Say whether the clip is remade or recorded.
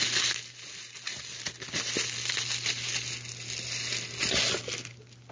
recorded